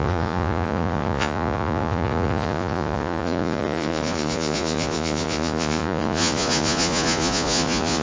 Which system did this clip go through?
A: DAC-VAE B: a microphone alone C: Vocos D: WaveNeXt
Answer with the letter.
C